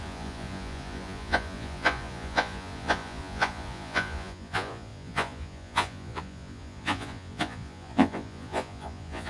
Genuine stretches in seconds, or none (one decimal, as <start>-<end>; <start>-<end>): none